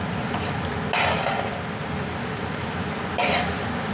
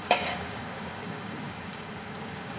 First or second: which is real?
first